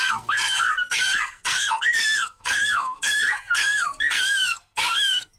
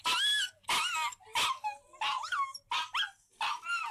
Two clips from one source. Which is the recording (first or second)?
second